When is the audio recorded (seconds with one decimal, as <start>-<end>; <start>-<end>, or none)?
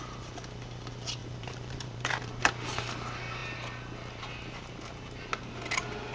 0.0-1.2; 2.4-6.1